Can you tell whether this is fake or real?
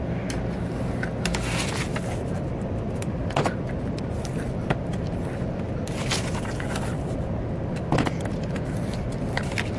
real